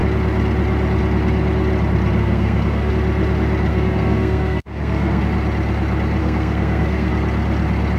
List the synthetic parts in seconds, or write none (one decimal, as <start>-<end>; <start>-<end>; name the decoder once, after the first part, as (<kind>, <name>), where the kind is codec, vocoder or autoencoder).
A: 2.2-2.9 (codec, SNAC); 3.7-5.2; 6.2-7.1